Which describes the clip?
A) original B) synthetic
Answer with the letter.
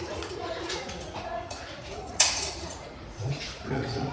B